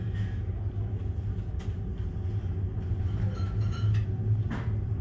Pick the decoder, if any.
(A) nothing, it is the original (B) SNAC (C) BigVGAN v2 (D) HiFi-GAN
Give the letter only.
A